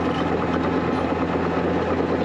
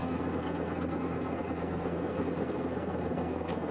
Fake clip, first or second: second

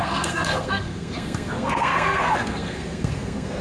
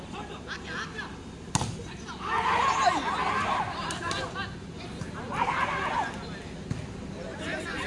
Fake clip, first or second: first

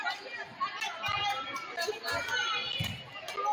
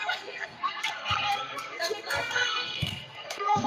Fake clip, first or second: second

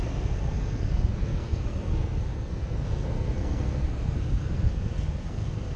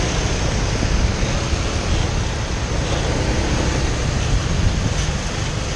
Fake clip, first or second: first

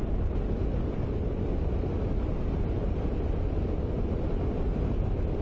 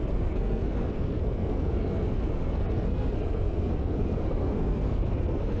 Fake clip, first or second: second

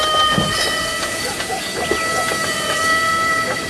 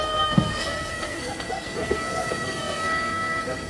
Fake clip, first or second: second